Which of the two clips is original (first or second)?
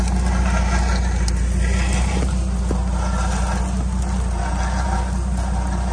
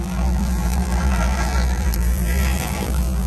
first